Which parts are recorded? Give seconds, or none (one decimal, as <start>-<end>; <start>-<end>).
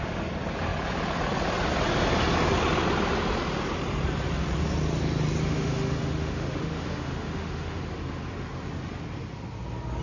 0.0-5.4; 7.8-10.0